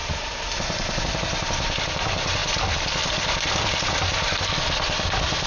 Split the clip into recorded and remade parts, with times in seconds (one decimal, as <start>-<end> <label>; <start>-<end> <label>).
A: 0.0-1.0 remade; 1.0-2.4 recorded; 2.4-5.5 remade